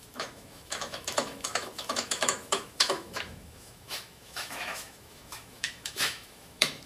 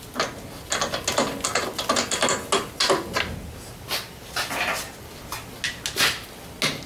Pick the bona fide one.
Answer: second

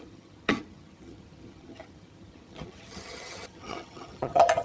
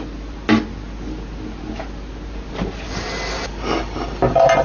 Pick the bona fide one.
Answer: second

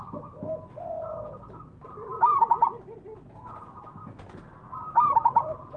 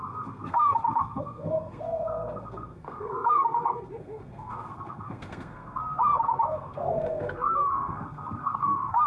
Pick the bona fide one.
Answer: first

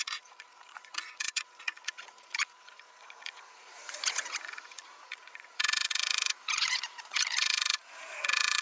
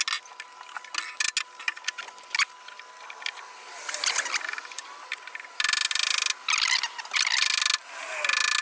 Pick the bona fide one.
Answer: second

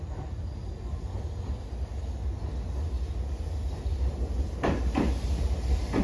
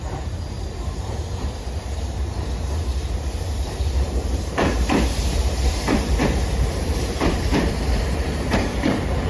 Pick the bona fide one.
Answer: first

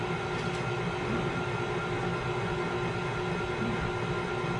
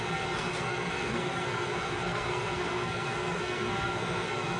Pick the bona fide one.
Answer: first